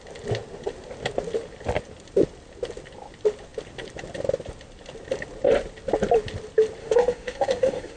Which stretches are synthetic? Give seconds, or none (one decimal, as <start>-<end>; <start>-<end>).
6.8-8.0